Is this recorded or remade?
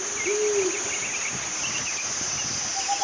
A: recorded